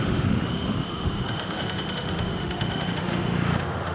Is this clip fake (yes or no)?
yes